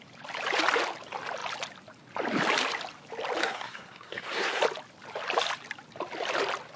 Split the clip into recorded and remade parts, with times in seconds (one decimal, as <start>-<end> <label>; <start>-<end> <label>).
0.0-3.4 recorded; 3.4-4.6 remade; 4.6-6.8 recorded